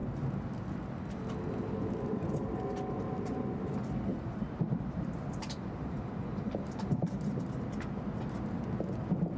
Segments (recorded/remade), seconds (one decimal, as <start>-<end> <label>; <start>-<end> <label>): 0.0-4.1 recorded; 4.1-7.3 remade; 7.3-9.4 recorded